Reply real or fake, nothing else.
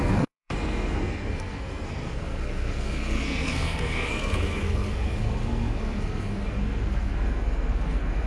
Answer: fake